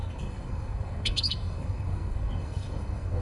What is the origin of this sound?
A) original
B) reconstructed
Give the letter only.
B